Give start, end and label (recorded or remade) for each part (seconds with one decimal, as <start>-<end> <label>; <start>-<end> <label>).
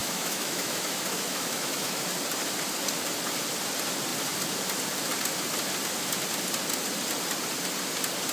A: 0.0-2.0 remade; 2.0-8.3 recorded